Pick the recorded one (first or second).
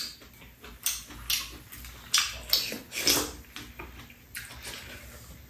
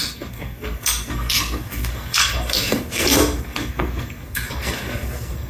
first